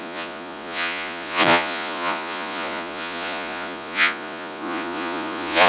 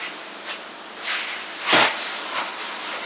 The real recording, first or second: second